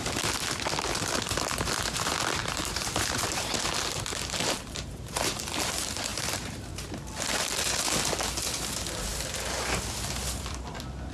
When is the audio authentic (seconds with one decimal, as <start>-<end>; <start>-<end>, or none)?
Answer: 0.0-2.4; 5.4-6.1; 6.9-11.1